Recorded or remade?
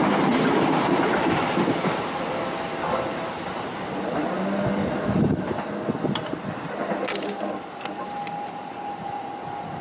recorded